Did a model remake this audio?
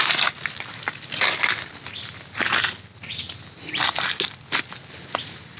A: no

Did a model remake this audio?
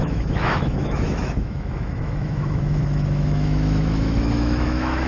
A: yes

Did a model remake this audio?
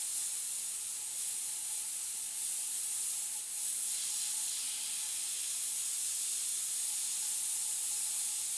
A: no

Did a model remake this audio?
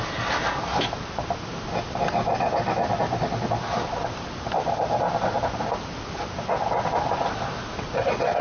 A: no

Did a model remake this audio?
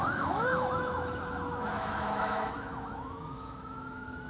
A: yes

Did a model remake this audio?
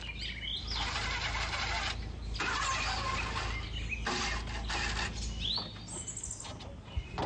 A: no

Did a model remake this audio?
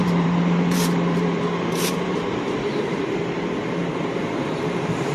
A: yes